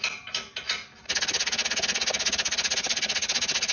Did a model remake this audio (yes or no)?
no